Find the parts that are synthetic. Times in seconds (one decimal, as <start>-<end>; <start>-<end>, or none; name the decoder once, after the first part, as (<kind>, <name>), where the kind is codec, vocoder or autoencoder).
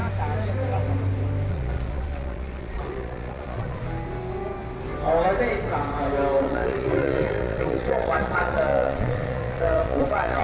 1.5-3.8 (vocoder, Vocos); 6.4-10.4